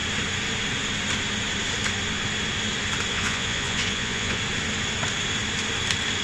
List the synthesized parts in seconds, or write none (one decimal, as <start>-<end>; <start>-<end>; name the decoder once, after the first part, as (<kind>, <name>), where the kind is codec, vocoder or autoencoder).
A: 3.1-4.4 (vocoder, Vocos)